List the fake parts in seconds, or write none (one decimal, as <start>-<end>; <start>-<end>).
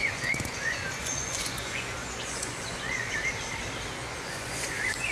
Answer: 0.0-3.1; 4.0-5.1